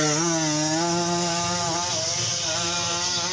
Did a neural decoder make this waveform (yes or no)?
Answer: no